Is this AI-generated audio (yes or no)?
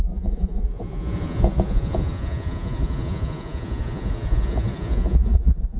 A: yes